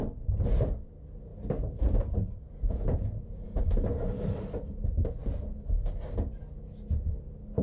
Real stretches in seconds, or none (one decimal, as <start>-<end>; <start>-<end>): 0.0-2.5; 3.6-7.6